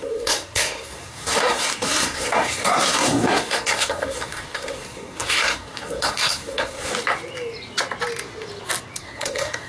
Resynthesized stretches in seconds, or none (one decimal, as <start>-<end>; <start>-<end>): 0.0-6.9; 9.0-9.7